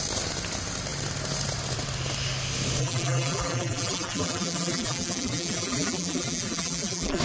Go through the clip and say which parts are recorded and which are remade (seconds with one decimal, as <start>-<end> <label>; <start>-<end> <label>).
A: 0.0-2.8 recorded; 2.8-7.2 remade